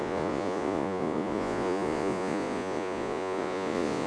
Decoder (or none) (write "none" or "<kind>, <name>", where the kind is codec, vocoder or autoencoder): vocoder, Vocos